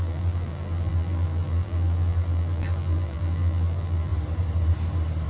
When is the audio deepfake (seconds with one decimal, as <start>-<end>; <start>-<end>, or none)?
0.0-4.1